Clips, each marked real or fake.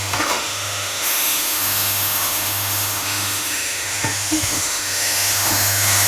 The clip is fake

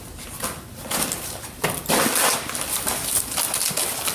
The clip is real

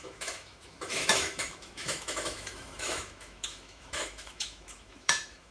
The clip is fake